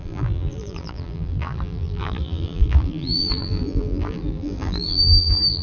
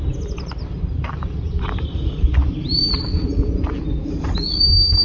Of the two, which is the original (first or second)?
second